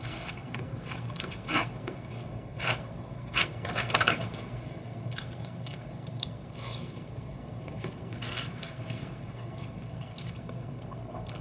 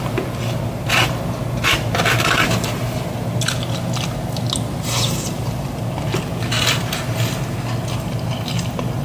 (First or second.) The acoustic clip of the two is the second